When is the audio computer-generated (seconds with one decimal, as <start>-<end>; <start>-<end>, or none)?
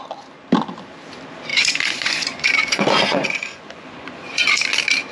1.5-4.6